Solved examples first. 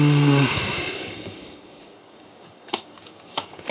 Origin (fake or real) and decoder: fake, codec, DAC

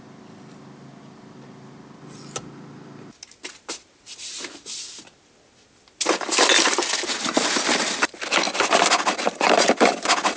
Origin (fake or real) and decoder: real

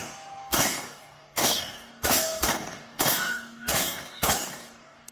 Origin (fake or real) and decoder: fake, codec, DAC